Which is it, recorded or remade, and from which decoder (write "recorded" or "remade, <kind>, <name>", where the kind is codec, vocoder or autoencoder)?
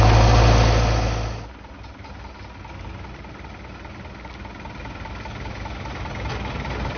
recorded